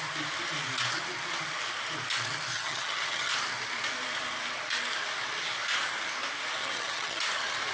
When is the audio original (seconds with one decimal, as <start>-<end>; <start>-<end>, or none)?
0.0-2.5; 3.3-6.6; 7.2-7.7